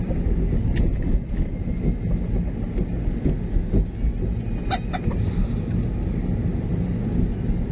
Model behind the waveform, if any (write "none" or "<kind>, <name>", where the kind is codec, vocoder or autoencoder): none